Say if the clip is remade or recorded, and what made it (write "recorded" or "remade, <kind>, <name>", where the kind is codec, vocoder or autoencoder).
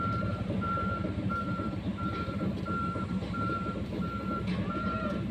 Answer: remade, vocoder, BigVGAN v2